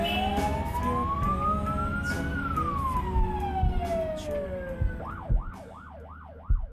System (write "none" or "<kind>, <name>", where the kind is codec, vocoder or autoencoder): none